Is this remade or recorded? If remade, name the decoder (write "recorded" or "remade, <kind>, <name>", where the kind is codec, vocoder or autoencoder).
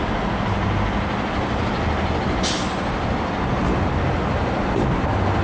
recorded